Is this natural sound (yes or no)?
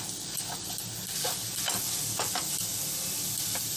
yes